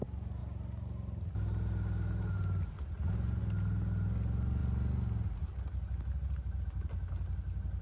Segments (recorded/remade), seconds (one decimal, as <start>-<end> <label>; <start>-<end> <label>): 0.0-7.8 recorded